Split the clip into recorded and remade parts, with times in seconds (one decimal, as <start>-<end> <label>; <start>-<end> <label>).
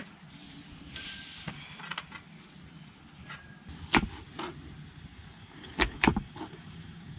0.0-5.1 recorded; 5.1-7.2 remade